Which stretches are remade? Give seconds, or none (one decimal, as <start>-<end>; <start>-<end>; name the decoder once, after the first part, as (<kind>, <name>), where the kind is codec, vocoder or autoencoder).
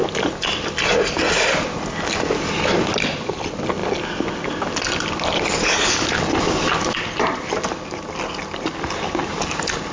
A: none